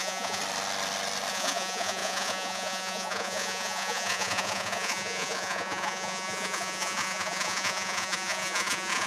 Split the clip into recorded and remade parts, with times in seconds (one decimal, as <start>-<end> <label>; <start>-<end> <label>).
0.0-0.4 remade; 0.4-1.3 recorded; 1.3-9.1 remade